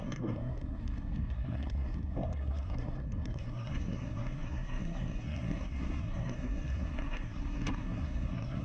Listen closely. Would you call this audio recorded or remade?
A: remade